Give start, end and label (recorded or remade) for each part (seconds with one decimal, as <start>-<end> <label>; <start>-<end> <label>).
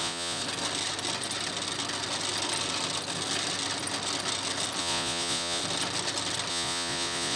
0.0-0.4 remade; 0.4-4.8 recorded; 4.8-5.6 remade; 5.6-6.5 recorded; 6.5-7.4 remade